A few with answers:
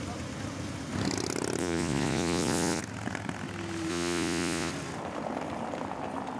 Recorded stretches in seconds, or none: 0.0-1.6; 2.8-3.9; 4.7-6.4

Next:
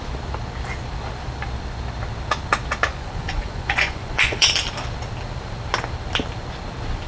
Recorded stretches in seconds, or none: 0.0-2.9; 4.5-7.1

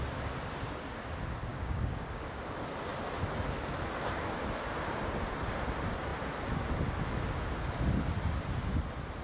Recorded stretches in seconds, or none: 0.0-1.5; 2.3-9.2

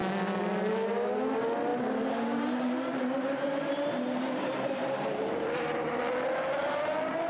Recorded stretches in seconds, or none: 0.0-1.7; 6.0-7.3

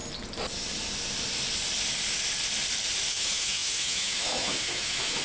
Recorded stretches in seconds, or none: 0.0-3.1

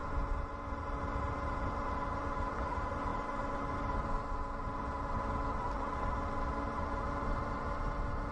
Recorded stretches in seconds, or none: 0.0-8.3

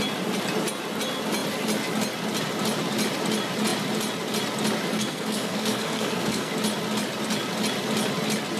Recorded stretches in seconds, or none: 0.0-4.9; 6.5-8.6

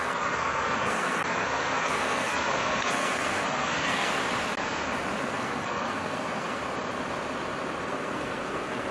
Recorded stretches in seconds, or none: 4.1-5.2; 6.6-7.8